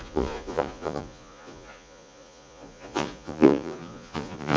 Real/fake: fake